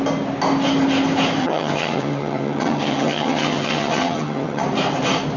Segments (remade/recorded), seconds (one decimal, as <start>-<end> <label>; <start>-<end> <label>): 0.0-1.4 recorded; 1.4-4.6 remade; 4.6-5.4 recorded